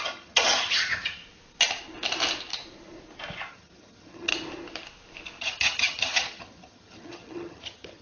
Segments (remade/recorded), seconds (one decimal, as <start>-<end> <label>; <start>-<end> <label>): 0.0-1.2 remade; 1.2-3.5 recorded; 3.5-4.3 remade; 4.3-5.4 recorded; 5.4-8.0 remade